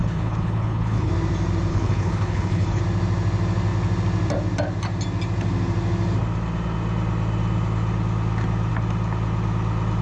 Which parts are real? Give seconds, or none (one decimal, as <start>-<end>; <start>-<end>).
1.1-1.7; 2.8-10.0